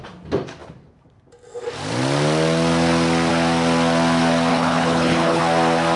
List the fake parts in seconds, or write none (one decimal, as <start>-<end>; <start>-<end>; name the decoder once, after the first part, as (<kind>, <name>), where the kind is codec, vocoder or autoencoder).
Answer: 4.5-5.4 (codec, HILCodec)